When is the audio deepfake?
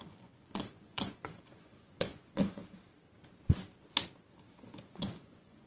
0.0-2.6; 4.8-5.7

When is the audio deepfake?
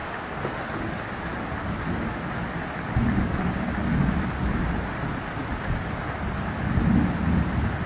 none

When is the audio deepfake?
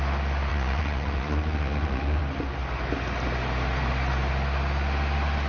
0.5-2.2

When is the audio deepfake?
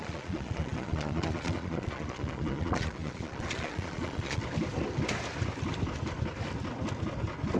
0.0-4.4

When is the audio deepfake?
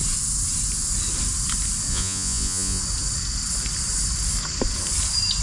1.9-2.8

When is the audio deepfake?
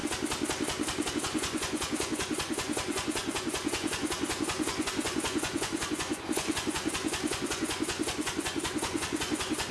1.1-9.7